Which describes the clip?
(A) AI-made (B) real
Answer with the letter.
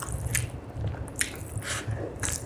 B